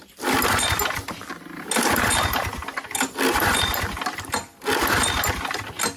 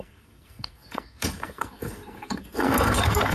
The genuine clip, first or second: first